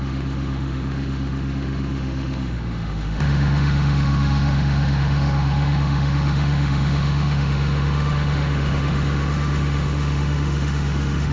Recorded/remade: remade